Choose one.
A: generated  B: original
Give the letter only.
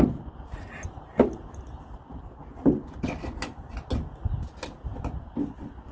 B